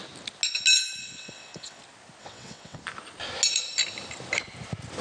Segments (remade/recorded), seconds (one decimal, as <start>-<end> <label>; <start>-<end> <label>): 0.0-1.0 recorded; 1.0-1.8 remade; 1.8-2.2 recorded; 2.2-2.8 remade; 2.8-5.0 recorded